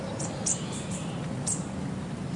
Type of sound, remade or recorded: remade